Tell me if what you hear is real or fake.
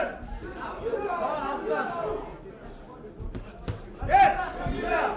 real